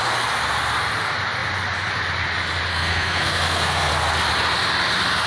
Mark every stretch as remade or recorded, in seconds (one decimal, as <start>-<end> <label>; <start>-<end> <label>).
0.0-2.7 recorded; 2.7-3.9 remade; 3.9-5.3 recorded